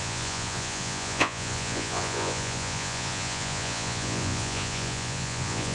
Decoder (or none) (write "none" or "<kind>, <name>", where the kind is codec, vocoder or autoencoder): vocoder, Vocos